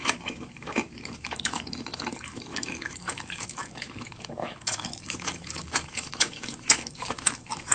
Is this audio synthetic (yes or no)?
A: yes